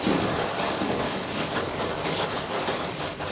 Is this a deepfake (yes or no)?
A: yes